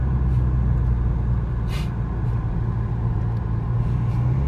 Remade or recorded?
recorded